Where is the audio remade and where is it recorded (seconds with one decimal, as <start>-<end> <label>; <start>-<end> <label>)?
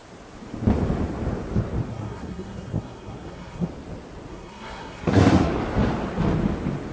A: 0.0-1.9 recorded; 1.9-3.7 remade; 3.7-4.3 recorded; 4.3-5.5 remade; 5.5-6.9 recorded